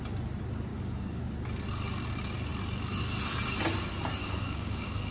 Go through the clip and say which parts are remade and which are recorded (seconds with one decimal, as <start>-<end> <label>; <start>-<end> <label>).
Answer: 0.0-0.7 recorded; 0.7-1.2 remade; 1.2-4.2 recorded; 4.2-5.1 remade